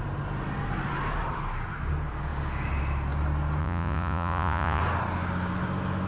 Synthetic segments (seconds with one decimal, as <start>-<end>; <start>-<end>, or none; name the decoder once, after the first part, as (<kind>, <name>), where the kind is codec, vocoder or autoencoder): 3.6-4.8 (vocoder, Vocos)